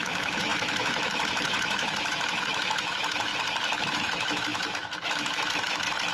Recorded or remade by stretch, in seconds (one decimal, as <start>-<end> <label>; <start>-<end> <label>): 0.0-3.3 remade; 3.3-3.8 recorded; 3.8-6.1 remade